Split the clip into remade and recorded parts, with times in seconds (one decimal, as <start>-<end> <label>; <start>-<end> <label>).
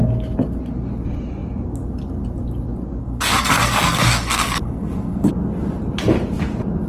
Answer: 0.0-3.0 recorded; 3.0-5.3 remade; 5.3-6.9 recorded